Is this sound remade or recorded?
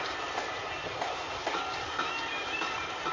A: recorded